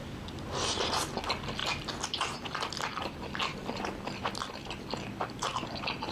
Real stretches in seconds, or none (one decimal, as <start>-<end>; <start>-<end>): 0.0-6.1